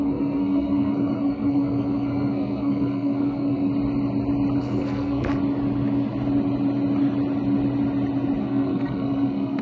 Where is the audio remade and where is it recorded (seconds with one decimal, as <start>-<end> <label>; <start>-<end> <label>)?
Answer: 0.0-3.7 remade; 3.7-4.6 recorded; 4.6-5.4 remade; 5.4-8.4 recorded; 8.4-9.6 remade

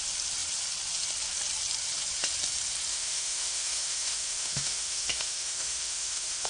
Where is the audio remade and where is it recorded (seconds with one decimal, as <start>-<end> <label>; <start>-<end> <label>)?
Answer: 0.0-2.9 recorded; 2.9-6.5 remade

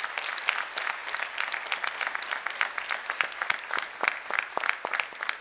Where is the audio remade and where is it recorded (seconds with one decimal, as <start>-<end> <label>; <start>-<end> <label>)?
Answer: 0.0-5.4 recorded